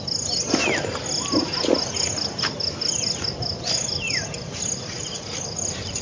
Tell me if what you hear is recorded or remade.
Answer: recorded